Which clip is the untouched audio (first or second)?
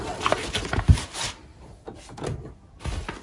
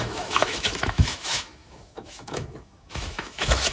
first